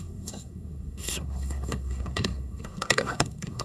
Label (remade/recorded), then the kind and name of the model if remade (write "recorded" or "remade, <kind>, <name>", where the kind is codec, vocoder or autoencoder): remade, codec, SNAC